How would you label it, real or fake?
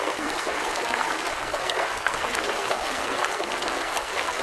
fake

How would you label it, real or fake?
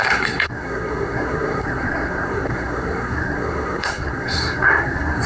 fake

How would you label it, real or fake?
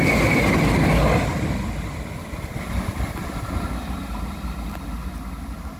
real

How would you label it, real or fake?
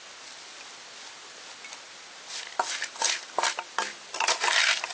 real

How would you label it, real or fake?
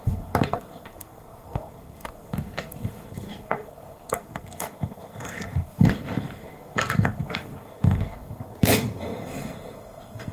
fake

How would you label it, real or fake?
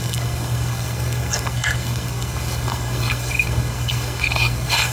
fake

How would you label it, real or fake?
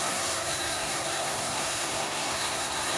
fake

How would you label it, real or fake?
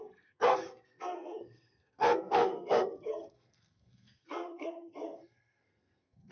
fake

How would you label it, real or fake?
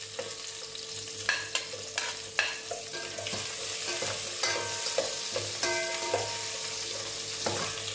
real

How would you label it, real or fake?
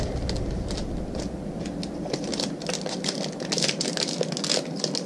real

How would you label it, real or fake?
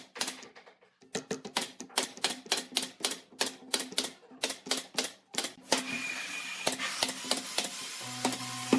real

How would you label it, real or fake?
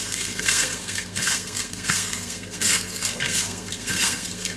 fake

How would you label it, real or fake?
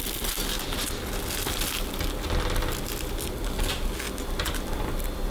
real